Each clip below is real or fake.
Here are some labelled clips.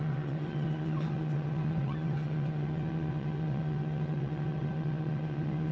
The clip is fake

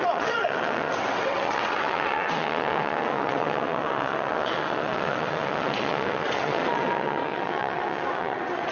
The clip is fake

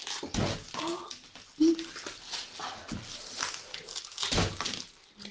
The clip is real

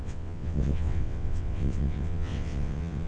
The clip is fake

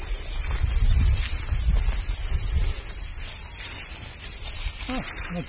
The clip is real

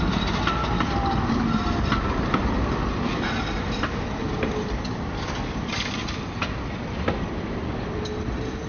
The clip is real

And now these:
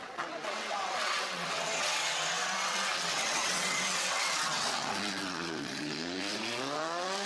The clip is fake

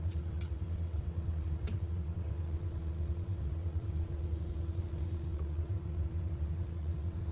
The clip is fake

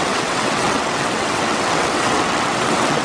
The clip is fake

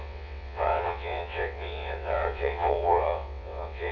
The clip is fake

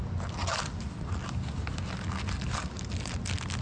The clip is real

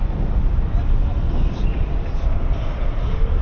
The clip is real